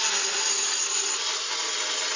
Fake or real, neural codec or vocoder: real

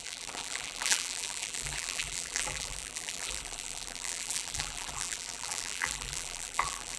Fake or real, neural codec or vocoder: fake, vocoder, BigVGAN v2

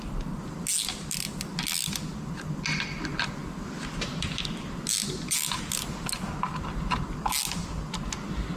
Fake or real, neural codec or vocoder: real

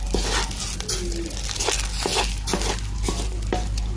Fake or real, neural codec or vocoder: real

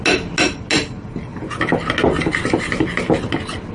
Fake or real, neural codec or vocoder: real